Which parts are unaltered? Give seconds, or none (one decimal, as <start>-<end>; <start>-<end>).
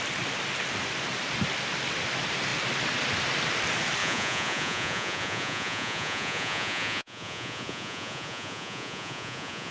0.0-4.0